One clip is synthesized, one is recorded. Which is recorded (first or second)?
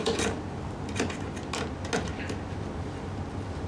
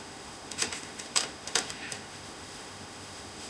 first